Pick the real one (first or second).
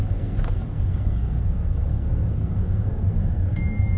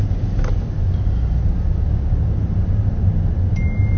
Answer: second